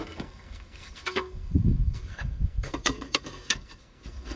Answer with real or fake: fake